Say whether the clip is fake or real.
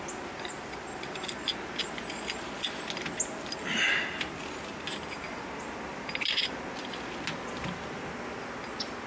real